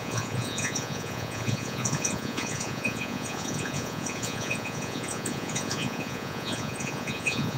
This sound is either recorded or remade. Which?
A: remade